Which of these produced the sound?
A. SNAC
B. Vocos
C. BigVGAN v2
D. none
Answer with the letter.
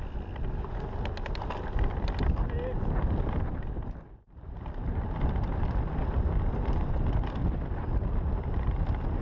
D